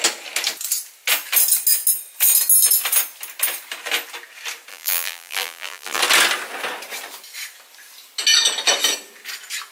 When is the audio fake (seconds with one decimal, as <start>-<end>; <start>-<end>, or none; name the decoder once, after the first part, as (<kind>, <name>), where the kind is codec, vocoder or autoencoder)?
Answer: 4.7-6.0 (vocoder, BigVGAN v2)